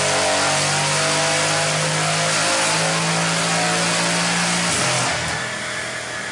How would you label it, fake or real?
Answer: real